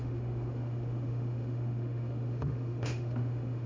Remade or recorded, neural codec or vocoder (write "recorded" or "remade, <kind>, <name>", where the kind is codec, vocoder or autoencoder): remade, autoencoder, DAC-VAE